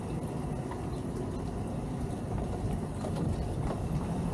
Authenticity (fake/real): real